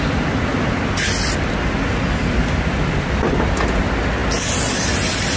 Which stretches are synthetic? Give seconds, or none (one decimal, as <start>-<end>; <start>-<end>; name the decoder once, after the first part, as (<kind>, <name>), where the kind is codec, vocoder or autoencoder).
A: none